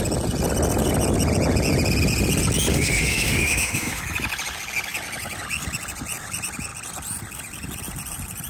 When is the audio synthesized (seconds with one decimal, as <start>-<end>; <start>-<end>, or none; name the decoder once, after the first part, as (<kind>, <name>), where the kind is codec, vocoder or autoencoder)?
2.7-4.0 (autoencoder, DAC-VAE)